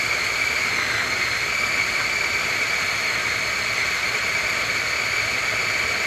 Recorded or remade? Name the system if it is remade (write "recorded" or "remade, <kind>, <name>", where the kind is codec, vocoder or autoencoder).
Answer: recorded